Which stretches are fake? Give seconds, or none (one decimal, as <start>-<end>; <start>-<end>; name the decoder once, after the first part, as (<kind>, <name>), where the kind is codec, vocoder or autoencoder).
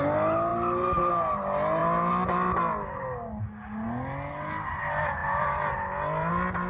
5.2-6.3 (vocoder, BigVGAN v2)